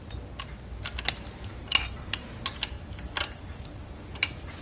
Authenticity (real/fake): real